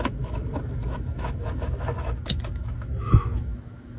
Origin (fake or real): fake